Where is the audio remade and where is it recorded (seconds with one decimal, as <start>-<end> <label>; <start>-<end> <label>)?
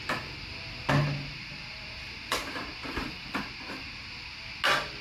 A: 0.0-1.0 recorded; 1.0-4.0 remade; 4.0-5.0 recorded